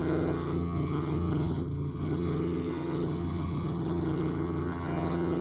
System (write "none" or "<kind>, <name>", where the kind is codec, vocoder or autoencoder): vocoder, HiFi-GAN